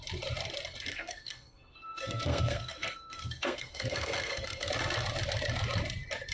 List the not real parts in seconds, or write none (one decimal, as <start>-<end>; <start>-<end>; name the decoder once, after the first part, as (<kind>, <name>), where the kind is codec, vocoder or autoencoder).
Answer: 0.9-4.7 (codec, SNAC)